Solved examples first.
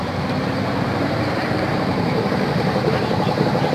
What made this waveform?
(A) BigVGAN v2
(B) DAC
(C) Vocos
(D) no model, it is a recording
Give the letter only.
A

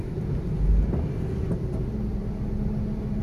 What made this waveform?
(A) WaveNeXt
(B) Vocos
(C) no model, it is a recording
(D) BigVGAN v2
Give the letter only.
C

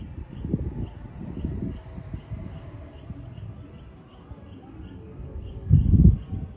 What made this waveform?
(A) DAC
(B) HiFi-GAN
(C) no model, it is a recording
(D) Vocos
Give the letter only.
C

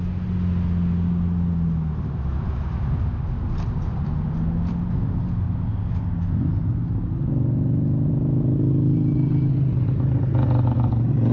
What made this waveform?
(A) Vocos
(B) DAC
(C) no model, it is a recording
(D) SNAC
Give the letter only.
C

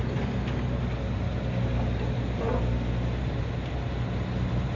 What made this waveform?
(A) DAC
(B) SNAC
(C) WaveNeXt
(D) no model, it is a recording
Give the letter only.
D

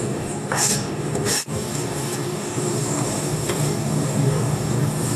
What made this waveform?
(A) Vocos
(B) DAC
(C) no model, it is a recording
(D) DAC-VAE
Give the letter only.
B